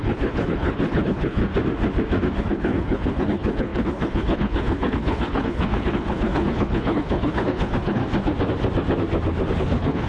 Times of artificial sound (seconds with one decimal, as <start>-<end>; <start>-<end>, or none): 0.0-1.4; 2.4-8.0; 9.6-10.1